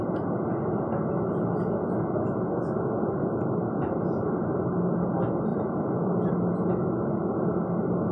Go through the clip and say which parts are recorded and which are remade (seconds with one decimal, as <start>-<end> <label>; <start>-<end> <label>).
0.0-5.5 recorded; 5.5-6.3 remade; 6.3-8.1 recorded